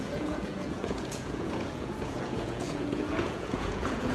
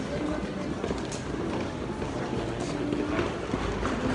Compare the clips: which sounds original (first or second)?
second